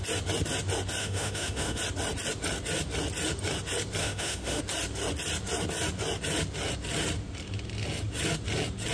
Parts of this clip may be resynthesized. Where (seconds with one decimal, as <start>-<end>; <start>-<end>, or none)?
1.0-1.8; 4.0-4.6